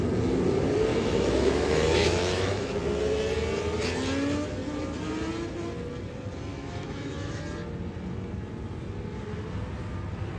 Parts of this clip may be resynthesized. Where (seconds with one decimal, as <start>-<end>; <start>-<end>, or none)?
0.9-2.7; 6.5-7.4